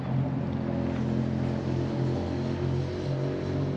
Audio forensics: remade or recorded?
recorded